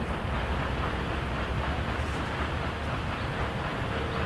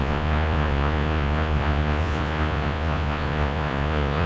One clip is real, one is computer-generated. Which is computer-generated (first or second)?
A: second